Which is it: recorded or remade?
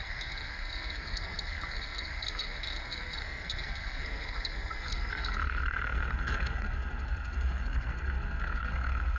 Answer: remade